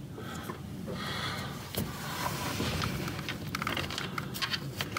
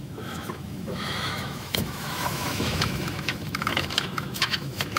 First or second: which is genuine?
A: first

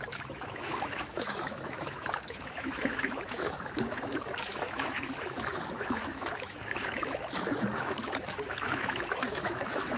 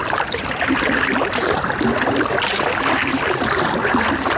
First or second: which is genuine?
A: second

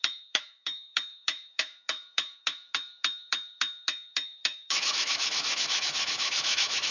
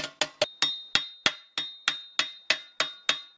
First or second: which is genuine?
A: second